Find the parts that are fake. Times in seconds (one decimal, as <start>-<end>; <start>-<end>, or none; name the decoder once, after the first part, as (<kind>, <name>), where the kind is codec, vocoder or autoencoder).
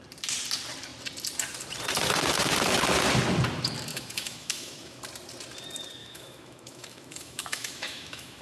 3.9-5.0 (autoencoder, DAC-VAE); 6.0-8.4